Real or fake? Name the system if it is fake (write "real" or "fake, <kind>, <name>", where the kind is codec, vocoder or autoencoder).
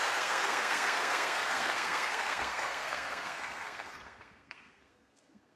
fake, codec, SNAC